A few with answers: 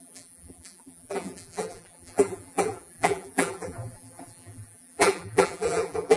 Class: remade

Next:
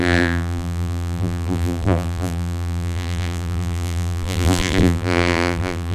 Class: remade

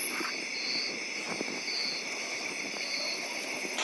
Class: recorded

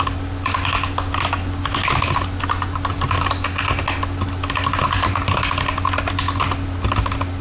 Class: recorded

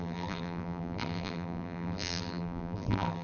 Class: remade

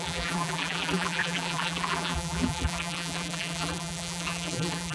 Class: remade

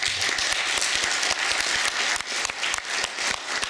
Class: recorded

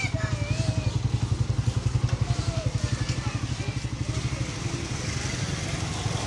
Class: recorded